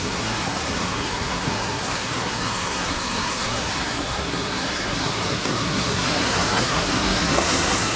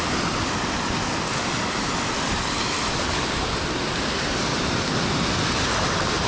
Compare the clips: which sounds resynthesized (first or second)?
first